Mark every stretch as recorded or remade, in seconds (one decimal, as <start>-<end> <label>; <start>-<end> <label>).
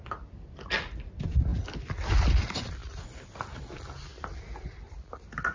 0.0-5.5 recorded